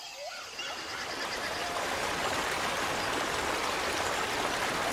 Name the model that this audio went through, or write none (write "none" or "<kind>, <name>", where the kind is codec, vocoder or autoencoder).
none